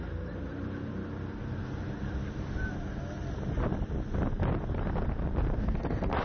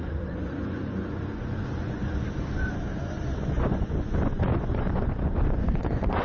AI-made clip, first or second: second